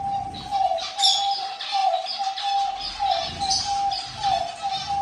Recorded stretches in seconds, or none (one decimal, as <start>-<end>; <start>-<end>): 0.0-5.0

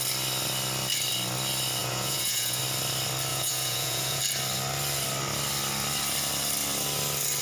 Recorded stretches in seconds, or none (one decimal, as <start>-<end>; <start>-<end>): 0.0-1.8; 2.6-3.3; 4.2-7.4

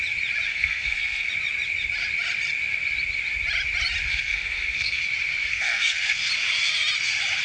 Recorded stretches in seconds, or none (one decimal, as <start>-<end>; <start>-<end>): 0.0-0.5; 1.3-4.1; 5.0-5.5; 6.3-7.4

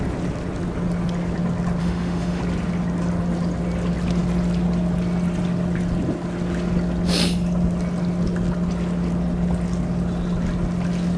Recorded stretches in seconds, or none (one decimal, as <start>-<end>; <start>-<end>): 0.0-1.8; 2.4-11.2

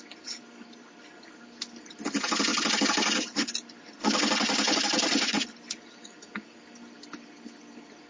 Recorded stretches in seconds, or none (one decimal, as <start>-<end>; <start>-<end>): 0.0-8.1

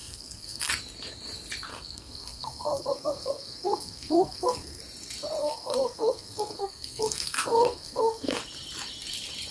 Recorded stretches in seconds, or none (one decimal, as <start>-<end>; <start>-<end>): 0.7-1.7; 4.8-5.4; 8.4-9.5

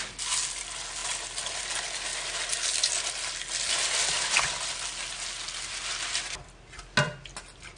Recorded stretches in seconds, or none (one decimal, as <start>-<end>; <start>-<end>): 0.0-7.8

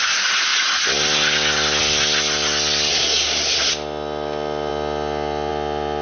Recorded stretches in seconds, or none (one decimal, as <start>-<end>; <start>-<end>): 0.0-2.9; 3.7-6.0